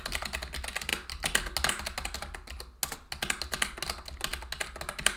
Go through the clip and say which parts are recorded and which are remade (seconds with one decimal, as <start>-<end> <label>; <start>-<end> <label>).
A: 0.0-5.2 recorded